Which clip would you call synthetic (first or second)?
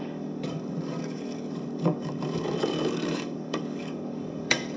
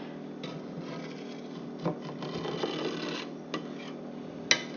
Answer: first